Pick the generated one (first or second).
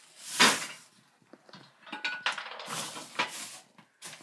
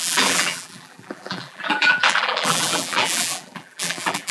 second